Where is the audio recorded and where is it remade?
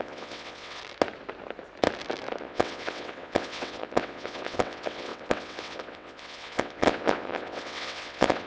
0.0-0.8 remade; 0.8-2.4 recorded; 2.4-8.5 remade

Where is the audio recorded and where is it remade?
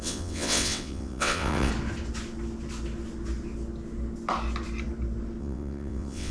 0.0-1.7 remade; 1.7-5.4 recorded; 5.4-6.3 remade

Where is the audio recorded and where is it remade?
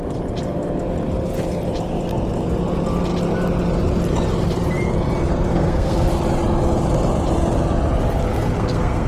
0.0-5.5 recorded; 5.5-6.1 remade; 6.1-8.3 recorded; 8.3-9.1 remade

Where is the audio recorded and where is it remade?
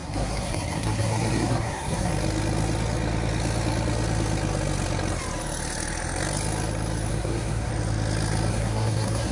0.0-2.1 remade; 2.1-7.1 recorded; 7.1-7.7 remade; 7.7-8.5 recorded; 8.5-9.3 remade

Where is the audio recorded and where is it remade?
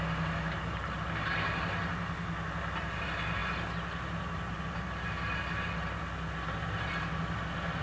0.0-7.8 recorded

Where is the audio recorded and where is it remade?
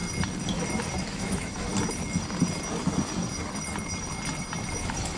0.0-1.0 recorded; 1.0-1.7 remade; 1.7-4.8 recorded; 4.8-5.2 remade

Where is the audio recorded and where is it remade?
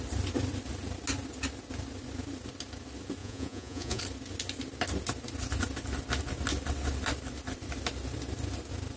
0.0-3.2 recorded; 3.2-4.0 remade; 4.0-9.0 recorded